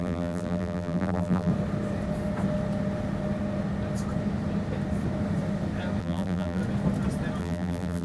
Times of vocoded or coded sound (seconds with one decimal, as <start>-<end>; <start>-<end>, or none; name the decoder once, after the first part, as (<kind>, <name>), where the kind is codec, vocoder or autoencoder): 0.0-1.5 (vocoder, BigVGAN v2); 6.0-6.6; 7.4-8.0